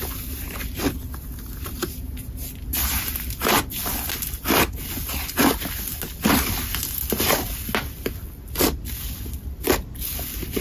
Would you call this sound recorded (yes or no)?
yes